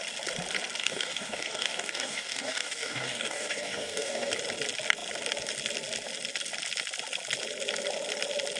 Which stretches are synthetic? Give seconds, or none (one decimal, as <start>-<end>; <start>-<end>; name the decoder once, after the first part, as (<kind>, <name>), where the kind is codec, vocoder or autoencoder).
0.8-4.3 (codec, DAC)